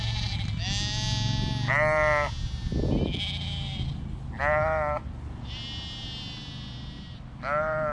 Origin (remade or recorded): recorded